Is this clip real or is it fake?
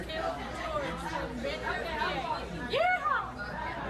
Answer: real